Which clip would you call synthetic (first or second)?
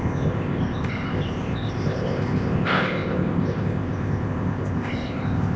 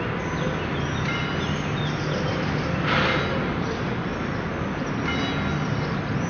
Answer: first